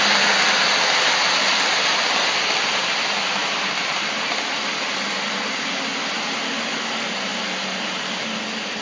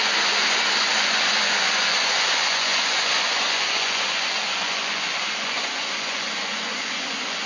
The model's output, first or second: second